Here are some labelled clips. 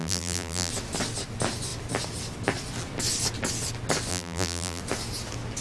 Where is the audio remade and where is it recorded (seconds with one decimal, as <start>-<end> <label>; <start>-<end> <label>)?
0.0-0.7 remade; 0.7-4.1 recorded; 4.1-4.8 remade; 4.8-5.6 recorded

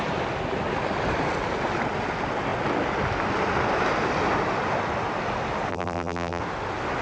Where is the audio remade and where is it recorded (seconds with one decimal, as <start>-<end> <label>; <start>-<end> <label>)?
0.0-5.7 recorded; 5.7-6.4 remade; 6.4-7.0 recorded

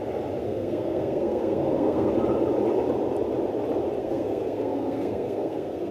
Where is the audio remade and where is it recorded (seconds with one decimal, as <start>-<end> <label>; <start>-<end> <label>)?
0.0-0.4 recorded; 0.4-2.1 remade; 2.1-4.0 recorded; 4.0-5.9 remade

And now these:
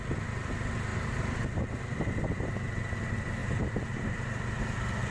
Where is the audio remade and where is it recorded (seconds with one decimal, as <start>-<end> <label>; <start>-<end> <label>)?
0.0-0.9 recorded; 0.9-2.0 remade; 2.0-3.4 recorded; 3.4-5.1 remade

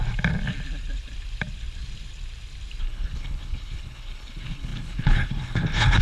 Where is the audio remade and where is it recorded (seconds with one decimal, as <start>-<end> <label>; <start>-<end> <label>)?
0.0-2.8 recorded; 2.8-6.0 remade

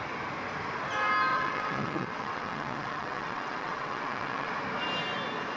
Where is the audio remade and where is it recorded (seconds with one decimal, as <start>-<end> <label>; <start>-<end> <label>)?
0.0-1.3 recorded; 1.3-4.5 remade; 4.5-5.6 recorded